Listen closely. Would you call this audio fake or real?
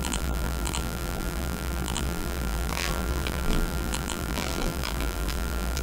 fake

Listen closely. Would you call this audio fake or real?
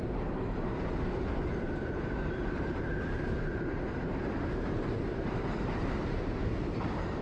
fake